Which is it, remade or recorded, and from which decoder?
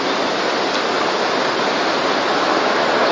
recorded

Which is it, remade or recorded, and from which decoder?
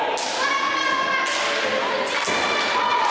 recorded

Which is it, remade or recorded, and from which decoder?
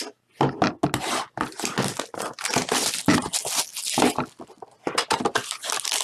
recorded